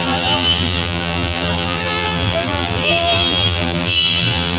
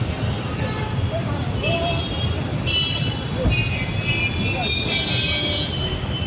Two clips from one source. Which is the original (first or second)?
second